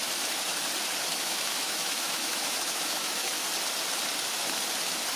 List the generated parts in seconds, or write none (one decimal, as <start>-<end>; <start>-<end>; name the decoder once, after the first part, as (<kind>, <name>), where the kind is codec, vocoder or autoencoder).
1.1-3.3 (autoencoder, DAC-VAE)